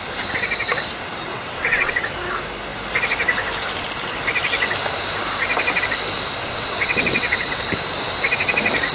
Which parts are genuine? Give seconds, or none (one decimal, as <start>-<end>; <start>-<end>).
0.0-1.3; 2.0-6.4; 7.6-8.9